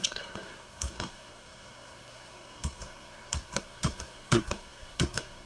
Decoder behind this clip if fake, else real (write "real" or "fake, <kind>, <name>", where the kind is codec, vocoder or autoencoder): fake, codec, SNAC